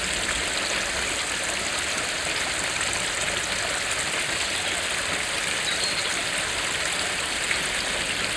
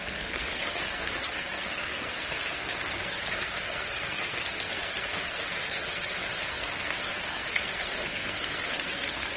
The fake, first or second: second